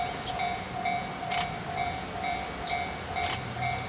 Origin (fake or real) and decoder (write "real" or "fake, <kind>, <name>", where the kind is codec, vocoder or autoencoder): real